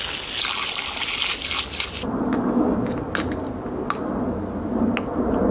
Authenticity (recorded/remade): recorded